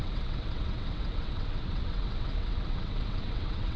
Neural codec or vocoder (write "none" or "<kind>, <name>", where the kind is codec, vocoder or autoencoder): vocoder, WaveNeXt